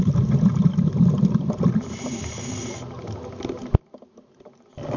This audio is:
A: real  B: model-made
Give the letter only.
A